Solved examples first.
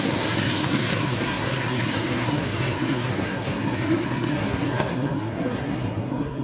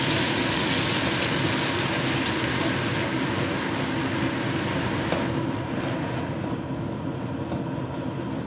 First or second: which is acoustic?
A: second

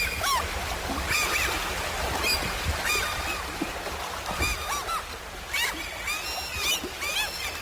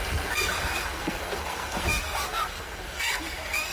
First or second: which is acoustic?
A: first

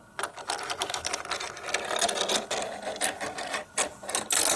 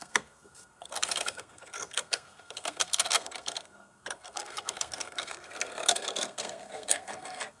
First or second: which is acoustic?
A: first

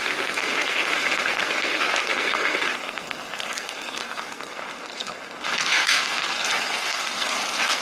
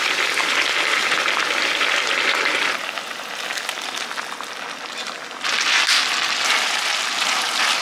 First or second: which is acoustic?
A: second